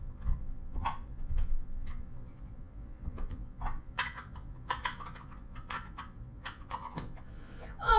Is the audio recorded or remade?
remade